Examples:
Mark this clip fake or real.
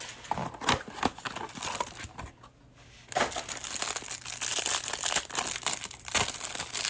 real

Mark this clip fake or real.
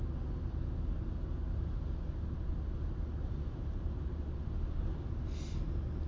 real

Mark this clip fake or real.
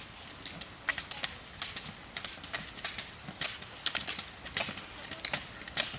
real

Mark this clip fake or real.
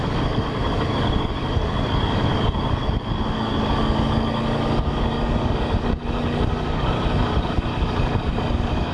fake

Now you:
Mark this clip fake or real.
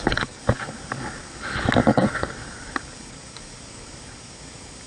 fake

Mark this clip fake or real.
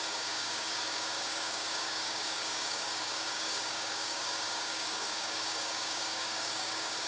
fake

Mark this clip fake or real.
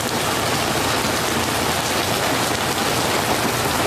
real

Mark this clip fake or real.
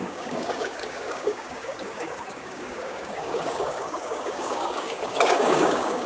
fake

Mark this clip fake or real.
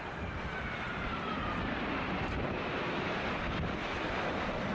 real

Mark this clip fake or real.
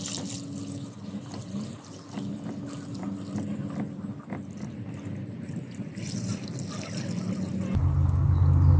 real